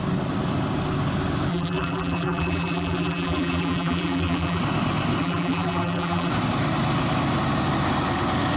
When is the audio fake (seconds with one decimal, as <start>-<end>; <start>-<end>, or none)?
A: 1.5-4.6; 5.2-6.3

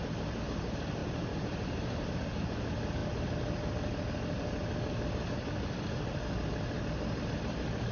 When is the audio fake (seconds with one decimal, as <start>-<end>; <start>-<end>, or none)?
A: 1.0-2.2

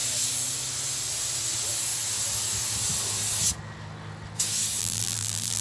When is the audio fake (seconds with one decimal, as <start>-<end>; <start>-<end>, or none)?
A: 4.8-5.6

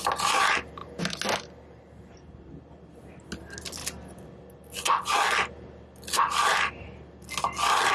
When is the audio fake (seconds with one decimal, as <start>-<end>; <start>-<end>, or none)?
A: none